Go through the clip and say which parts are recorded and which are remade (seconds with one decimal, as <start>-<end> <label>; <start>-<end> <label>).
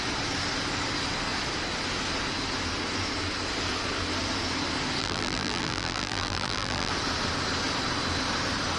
0.0-5.0 recorded; 5.0-6.9 remade; 6.9-8.8 recorded